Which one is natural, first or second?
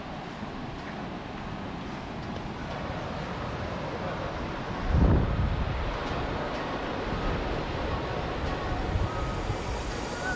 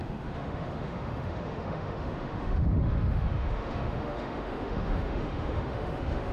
first